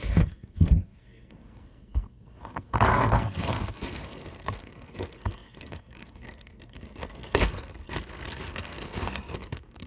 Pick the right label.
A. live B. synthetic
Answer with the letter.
B